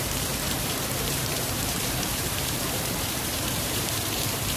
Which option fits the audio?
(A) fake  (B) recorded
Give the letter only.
A